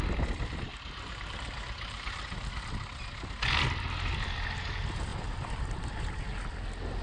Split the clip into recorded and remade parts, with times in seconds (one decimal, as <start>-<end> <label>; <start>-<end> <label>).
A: 0.0-0.7 recorded; 0.7-2.7 remade; 2.7-5.1 recorded; 5.1-6.1 remade; 6.1-7.0 recorded